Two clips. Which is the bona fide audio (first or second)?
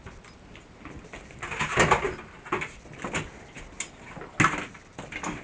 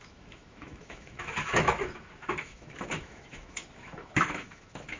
first